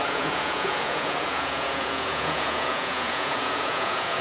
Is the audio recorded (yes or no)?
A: no